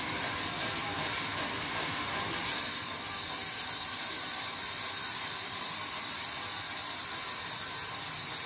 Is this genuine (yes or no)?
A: no